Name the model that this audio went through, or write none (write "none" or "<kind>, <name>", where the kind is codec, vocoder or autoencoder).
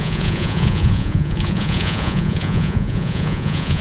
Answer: vocoder, Vocos